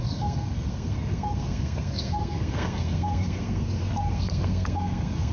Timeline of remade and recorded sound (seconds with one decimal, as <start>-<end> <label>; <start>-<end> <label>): 0.0-5.3 remade